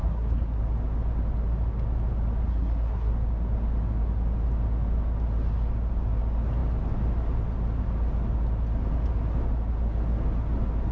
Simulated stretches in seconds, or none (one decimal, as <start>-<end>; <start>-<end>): 0.0-0.6; 2.5-3.1